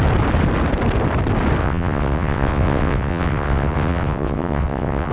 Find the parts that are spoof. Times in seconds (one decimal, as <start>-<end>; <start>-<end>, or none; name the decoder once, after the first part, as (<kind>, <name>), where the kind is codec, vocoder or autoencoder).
1.6-5.1 (vocoder, WaveNeXt)